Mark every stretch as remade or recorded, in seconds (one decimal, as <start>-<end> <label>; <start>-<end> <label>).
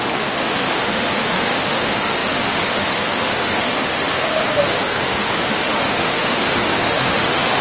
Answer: 0.0-7.6 remade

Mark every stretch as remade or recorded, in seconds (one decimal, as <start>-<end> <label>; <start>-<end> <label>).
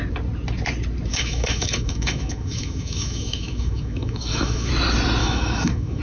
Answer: 0.0-1.1 recorded; 1.1-4.7 remade; 4.7-5.2 recorded; 5.2-6.0 remade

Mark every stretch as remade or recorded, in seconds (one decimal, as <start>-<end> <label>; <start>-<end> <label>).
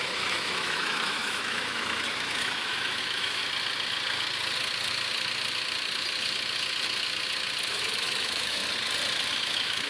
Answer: 0.0-3.4 remade; 3.4-7.7 recorded; 7.7-8.6 remade; 8.6-9.4 recorded; 9.4-9.9 remade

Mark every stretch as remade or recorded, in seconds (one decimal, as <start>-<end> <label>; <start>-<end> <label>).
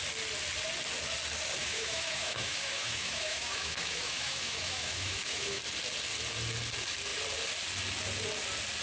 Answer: 0.0-1.6 recorded; 1.6-5.6 remade; 5.6-8.8 recorded